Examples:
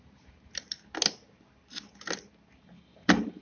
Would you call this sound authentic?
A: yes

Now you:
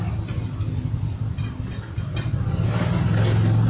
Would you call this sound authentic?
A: yes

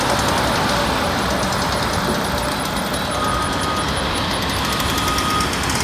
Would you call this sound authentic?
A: yes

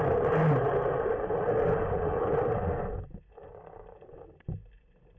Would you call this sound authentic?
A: yes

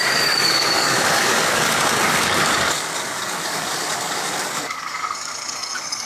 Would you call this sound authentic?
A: no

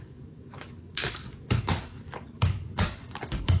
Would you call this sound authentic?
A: no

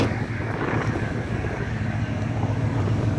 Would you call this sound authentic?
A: no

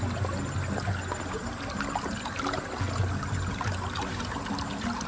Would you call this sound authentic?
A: yes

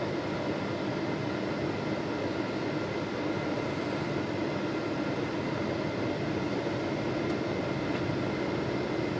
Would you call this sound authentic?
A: yes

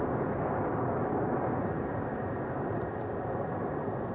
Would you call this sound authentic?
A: yes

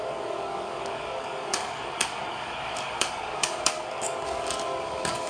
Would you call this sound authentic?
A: no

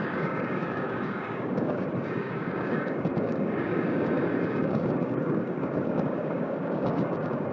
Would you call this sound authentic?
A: no